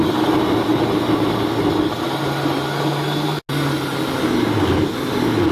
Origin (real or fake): real